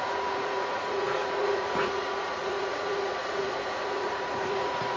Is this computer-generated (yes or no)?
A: yes